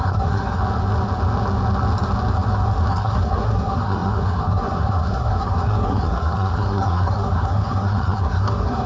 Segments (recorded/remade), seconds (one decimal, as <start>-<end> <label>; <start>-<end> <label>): 0.0-0.6 remade; 0.6-2.9 recorded; 2.9-8.9 remade